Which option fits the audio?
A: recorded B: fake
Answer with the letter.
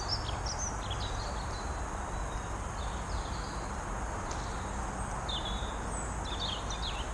A